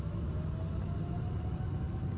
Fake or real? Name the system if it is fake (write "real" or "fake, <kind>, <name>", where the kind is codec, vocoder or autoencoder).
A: real